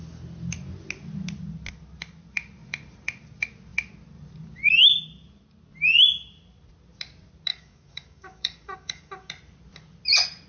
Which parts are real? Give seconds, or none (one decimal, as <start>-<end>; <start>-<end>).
0.0-7.5; 9.3-10.5

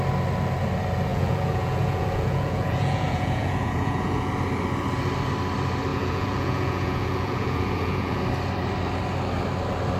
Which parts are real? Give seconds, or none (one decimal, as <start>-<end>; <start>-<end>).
0.0-1.1; 4.3-5.9; 8.2-10.0

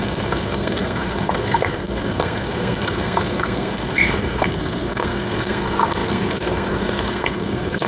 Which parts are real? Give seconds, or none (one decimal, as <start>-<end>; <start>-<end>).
none

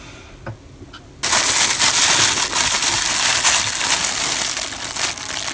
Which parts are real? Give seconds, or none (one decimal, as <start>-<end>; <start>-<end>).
0.0-5.5

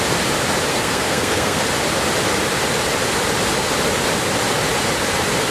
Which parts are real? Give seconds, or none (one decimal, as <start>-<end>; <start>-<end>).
0.0-0.7; 1.6-5.5